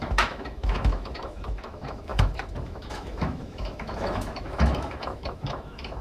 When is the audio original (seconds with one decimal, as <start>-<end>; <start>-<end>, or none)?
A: none